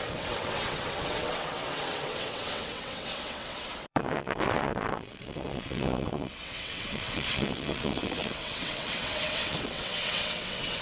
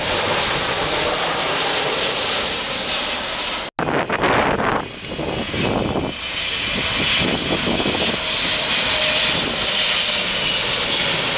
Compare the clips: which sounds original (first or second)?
second